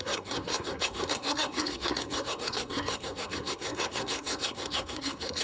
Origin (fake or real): fake